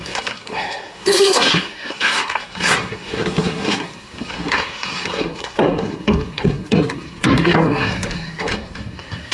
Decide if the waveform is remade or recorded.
remade